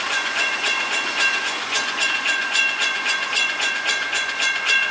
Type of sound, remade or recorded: remade